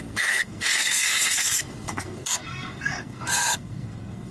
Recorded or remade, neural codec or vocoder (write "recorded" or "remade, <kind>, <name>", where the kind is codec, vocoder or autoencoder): remade, codec, SNAC